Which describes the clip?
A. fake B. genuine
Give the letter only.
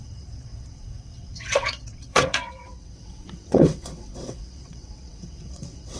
A